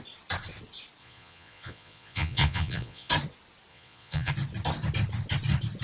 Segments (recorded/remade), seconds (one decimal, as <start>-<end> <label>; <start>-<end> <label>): 0.0-1.0 recorded; 1.0-3.1 remade; 3.1-3.7 recorded; 3.7-4.3 remade; 4.3-5.8 recorded